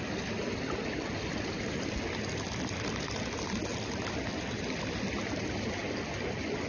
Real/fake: real